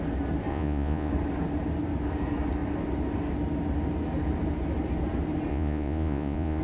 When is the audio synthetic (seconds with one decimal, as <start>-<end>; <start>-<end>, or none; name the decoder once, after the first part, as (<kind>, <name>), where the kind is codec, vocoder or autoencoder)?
0.5-1.1 (vocoder, Vocos); 5.5-6.6